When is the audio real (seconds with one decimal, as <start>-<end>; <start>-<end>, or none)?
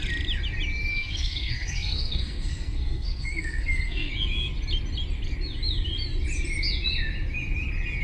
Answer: 0.0-0.9; 4.1-8.0